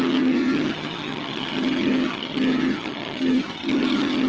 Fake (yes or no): yes